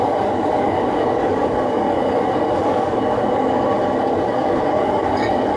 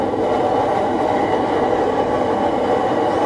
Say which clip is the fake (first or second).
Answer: first